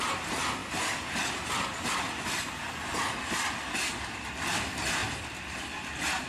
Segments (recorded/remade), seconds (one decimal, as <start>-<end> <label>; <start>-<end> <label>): 0.0-6.3 recorded